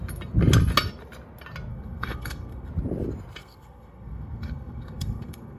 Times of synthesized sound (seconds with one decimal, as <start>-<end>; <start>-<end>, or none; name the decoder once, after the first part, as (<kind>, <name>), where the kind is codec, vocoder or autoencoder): 1.7-2.7 (codec, SNAC); 3.4-5.6